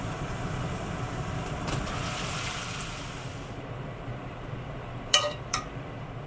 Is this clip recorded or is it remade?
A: remade